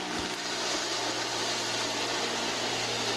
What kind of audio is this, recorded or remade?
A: recorded